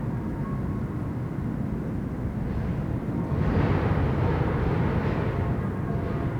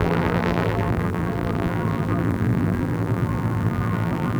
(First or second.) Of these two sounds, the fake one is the second